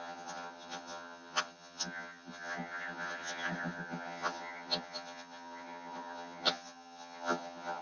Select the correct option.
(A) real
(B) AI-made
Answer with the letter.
B